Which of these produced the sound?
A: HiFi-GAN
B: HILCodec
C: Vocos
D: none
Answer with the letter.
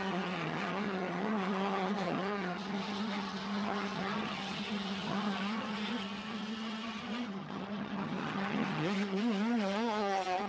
A